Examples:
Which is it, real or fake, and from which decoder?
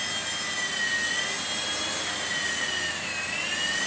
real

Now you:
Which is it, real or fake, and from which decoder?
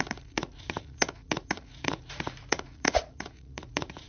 fake, vocoder, Vocos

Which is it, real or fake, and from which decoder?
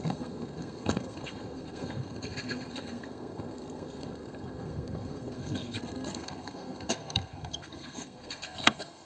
fake, codec, SNAC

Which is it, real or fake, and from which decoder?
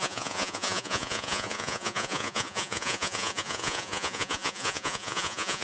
fake, vocoder, Vocos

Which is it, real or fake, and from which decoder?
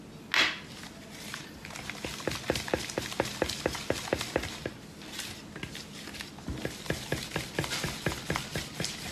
real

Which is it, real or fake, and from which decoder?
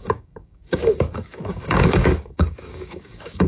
fake, codec, DAC